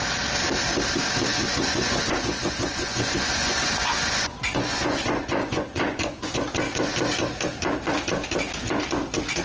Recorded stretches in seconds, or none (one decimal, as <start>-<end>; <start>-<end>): 0.0-1.3; 6.4-9.4